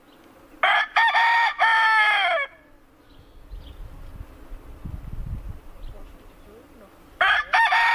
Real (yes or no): yes